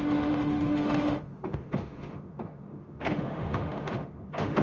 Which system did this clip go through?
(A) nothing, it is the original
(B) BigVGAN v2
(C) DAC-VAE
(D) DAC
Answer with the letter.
C